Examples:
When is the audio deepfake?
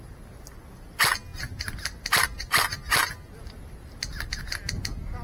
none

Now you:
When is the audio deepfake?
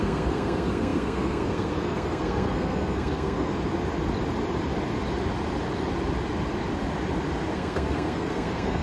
0.0-3.5 (codec, SNAC); 7.5-8.8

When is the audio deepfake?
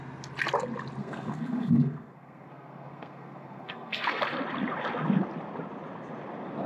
1.0-4.2 (codec, SNAC)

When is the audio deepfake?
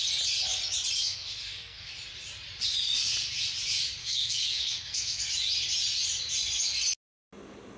1.0-1.9 (codec, SNAC); 4.0-5.2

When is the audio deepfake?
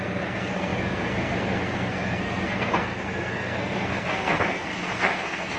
0.0-5.6 (codec, SNAC)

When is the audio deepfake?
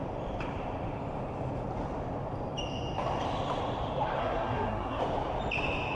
4.2-5.0 (codec, SNAC)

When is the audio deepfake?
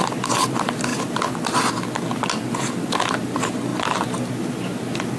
none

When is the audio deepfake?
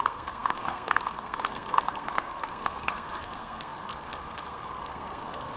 0.0-5.6 (codec, SNAC)